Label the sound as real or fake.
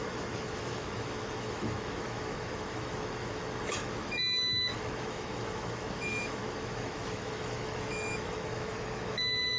fake